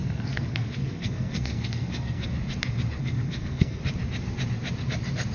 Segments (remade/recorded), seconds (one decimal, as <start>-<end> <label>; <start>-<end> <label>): 0.0-2.3 remade; 2.3-3.0 recorded; 3.0-3.8 remade; 3.8-5.3 recorded